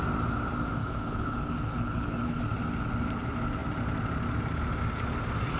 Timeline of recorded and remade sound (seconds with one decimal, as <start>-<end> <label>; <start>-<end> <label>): 0.0-0.8 recorded; 0.8-2.4 remade; 2.4-5.6 recorded